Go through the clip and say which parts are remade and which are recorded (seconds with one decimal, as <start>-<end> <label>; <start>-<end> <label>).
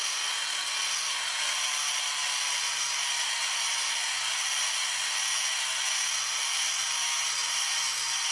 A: 0.0-8.3 recorded